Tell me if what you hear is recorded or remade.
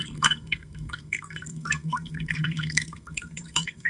remade